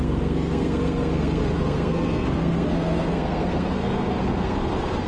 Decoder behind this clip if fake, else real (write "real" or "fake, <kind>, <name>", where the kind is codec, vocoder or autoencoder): fake, codec, SNAC